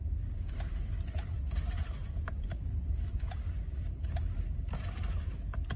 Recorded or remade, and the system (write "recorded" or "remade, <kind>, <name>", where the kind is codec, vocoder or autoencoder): recorded